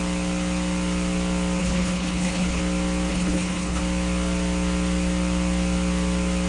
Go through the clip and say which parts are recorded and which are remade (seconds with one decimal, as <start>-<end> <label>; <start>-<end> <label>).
0.0-1.6 recorded; 1.6-2.6 remade; 2.6-3.1 recorded; 3.1-3.8 remade; 3.8-6.5 recorded